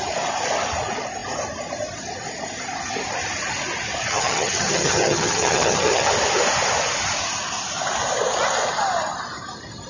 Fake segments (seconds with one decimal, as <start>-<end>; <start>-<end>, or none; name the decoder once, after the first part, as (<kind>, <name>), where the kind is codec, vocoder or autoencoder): 4.0-6.1 (vocoder, HiFi-GAN)